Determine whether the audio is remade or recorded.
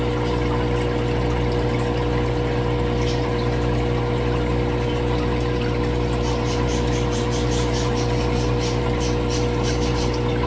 recorded